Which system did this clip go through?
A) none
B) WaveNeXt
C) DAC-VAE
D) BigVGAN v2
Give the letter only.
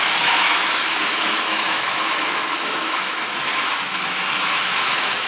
C